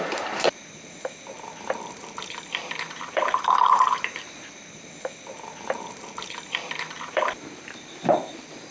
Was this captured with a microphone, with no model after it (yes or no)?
no